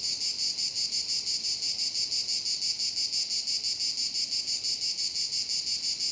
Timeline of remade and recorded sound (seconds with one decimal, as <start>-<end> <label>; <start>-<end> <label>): 0.0-6.1 recorded